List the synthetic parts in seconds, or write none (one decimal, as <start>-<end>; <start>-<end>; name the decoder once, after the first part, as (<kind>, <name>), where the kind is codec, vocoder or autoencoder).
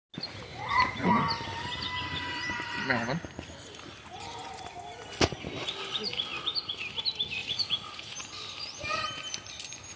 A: 0.5-1.1 (vocoder, Vocos); 7.4-8.1